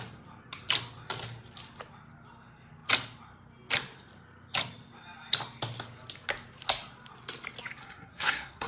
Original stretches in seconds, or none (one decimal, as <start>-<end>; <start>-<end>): 0.0-7.8